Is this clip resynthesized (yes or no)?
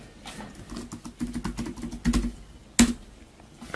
no